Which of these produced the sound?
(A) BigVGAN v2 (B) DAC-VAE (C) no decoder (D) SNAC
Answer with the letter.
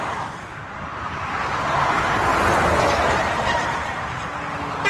C